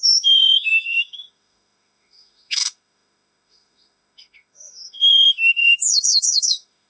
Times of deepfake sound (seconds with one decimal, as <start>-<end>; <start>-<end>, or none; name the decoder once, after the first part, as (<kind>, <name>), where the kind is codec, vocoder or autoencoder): 0.0-6.9 (autoencoder, DAC-VAE)

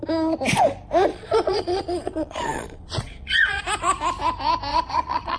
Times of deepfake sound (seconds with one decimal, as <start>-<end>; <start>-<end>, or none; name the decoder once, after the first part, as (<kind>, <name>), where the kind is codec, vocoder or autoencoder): 1.1-3.6 (vocoder, Vocos); 4.7-5.4